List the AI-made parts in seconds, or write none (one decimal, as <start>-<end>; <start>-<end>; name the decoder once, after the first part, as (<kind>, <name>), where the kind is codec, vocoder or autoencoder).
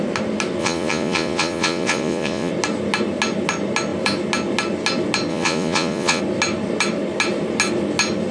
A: 0.6-2.5 (vocoder, Vocos); 5.3-6.2